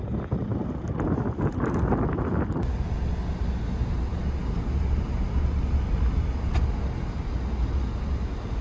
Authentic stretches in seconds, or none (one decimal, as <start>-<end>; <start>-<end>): 0.0-8.6